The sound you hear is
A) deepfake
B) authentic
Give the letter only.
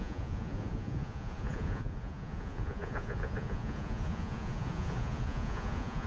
A